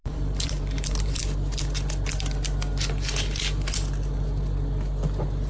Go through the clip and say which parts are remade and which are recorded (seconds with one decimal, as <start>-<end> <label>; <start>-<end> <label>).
0.0-1.2 remade; 1.2-5.5 recorded

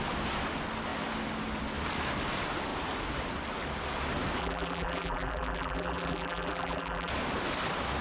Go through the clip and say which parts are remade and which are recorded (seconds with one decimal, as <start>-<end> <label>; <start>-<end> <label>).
0.0-4.4 recorded; 4.4-7.1 remade; 7.1-8.0 recorded